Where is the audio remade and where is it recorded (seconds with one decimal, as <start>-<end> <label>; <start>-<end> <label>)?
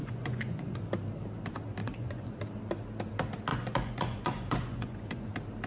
0.0-0.8 remade; 0.8-1.8 recorded; 1.8-2.4 remade; 2.4-3.5 recorded; 3.5-5.3 remade; 5.3-5.7 recorded